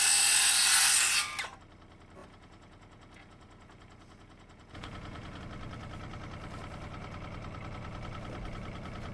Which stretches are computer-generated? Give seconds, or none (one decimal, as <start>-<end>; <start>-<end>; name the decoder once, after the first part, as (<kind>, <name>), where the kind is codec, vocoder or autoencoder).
2.2-5.4 (vocoder, Vocos)